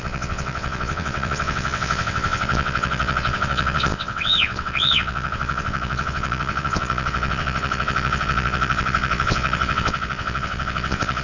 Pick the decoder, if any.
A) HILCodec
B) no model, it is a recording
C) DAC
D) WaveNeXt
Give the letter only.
D